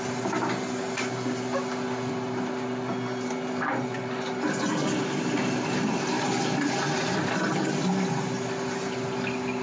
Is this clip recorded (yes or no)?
yes